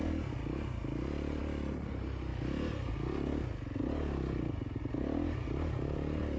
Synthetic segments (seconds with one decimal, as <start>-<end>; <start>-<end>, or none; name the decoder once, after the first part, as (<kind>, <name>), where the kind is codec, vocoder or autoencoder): none